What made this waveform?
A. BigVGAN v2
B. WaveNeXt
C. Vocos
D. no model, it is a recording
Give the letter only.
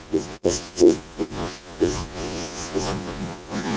C